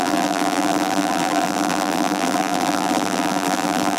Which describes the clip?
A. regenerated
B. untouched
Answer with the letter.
A